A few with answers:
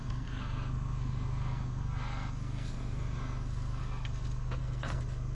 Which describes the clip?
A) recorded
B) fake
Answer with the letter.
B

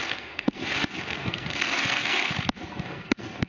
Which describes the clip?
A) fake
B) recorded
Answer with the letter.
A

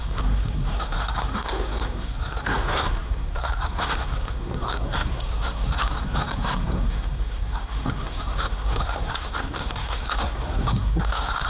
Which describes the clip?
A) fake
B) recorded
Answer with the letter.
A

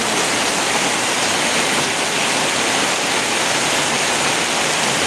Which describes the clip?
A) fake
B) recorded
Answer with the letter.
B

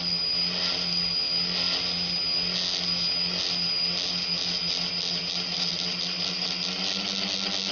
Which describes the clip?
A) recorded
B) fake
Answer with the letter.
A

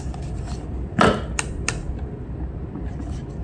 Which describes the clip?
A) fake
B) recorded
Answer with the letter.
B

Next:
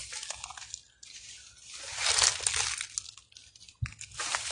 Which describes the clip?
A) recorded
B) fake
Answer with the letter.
A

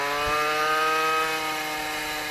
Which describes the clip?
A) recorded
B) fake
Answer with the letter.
A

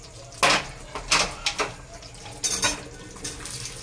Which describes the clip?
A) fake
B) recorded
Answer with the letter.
B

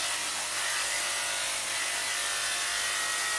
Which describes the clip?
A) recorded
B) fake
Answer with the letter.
A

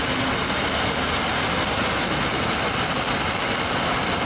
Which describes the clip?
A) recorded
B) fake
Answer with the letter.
A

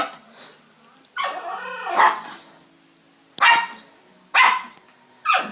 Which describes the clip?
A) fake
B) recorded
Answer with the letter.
B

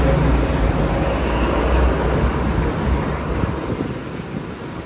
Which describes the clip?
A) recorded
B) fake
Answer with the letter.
A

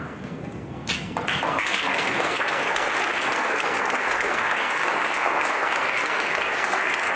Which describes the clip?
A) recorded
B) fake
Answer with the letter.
B